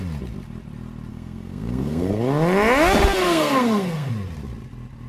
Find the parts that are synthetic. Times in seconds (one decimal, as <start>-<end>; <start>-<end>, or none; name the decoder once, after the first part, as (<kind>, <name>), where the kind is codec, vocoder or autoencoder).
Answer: 1.1-2.2 (codec, SNAC); 3.2-4.1